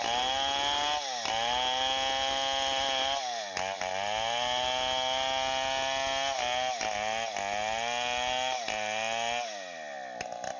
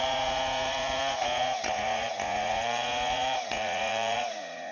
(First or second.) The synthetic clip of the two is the second